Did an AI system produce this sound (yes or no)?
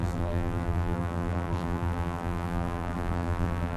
yes